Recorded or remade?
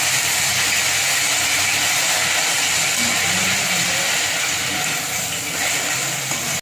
recorded